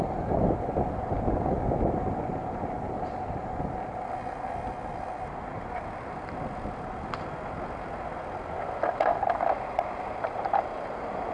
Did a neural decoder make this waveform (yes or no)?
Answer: no